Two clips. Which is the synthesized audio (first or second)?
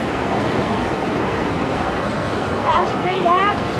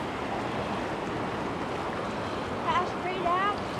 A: first